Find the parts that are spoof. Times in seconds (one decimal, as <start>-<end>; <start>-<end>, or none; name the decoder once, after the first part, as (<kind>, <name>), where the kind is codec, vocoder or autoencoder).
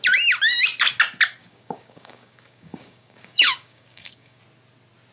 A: 1.4-4.4 (codec, DAC)